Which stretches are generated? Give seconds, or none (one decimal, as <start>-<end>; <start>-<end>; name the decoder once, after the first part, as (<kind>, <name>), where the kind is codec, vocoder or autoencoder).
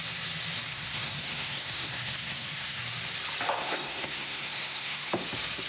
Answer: 0.7-2.8 (codec, SNAC); 3.6-5.1